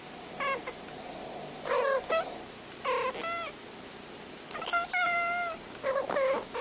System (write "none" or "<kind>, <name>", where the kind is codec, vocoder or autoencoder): none